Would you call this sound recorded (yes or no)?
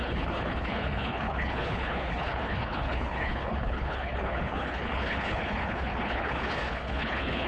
no